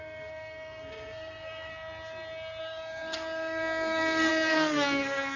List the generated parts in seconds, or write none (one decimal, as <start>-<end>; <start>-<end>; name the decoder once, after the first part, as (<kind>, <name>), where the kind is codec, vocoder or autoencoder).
0.0-1.7 (codec, SNAC); 2.6-5.4